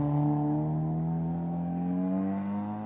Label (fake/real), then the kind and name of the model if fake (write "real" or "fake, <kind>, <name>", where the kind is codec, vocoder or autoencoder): real